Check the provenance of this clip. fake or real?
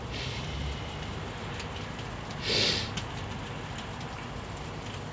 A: real